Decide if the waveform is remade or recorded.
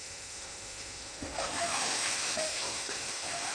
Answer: remade